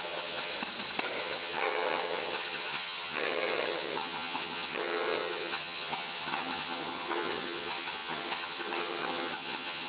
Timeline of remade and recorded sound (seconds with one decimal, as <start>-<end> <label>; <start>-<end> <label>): 0.0-0.5 remade; 0.5-1.2 recorded; 1.2-9.9 remade